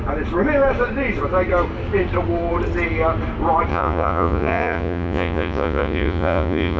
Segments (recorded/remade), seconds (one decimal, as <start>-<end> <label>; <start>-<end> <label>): 0.0-3.7 recorded; 3.7-6.8 remade